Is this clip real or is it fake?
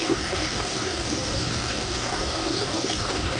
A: fake